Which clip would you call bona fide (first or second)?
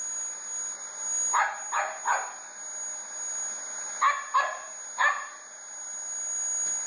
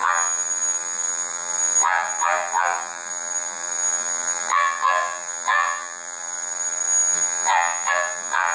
first